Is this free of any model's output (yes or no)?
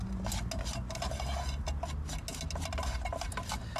yes